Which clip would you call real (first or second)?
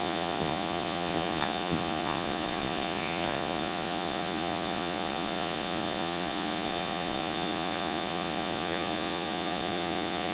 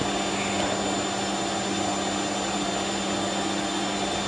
second